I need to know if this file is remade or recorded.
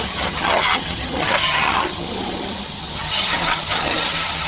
remade